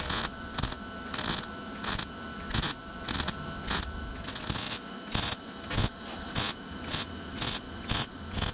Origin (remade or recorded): recorded